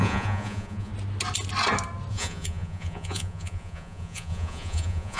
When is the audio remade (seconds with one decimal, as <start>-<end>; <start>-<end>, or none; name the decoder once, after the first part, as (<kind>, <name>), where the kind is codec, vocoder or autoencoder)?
0.0-0.9 (vocoder, Vocos); 2.1-5.2